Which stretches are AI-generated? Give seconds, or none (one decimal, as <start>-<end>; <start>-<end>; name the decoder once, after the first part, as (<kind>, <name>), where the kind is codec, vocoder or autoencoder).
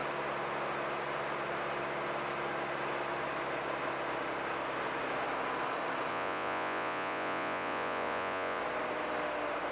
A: 6.1-8.6 (vocoder, Vocos)